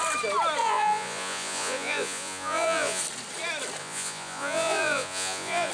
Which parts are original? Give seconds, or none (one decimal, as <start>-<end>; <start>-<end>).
0.0-0.6; 3.0-3.8